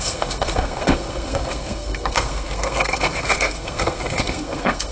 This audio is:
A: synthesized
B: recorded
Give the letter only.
A